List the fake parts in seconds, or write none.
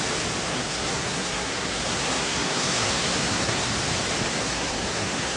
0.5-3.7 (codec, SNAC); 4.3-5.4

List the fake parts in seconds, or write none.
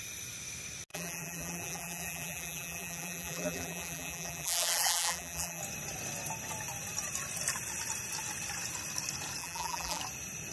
0.9-5.6 (vocoder, BigVGAN v2); 9.4-10.0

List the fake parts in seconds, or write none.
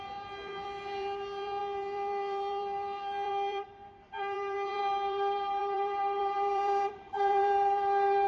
0.0-8.3 (vocoder, BigVGAN v2)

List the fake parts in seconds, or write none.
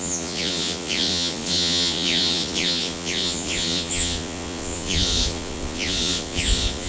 0.0-6.9 (vocoder, Vocos)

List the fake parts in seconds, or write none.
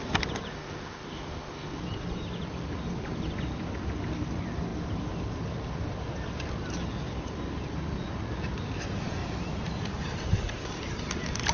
0.5-1.8 (autoencoder, DAC-VAE)